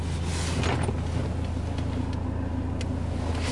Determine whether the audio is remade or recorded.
recorded